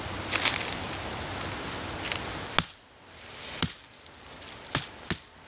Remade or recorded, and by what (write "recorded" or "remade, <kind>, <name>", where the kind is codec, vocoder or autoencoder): recorded